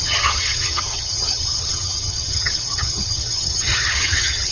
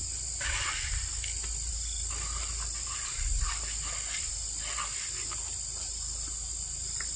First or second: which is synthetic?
first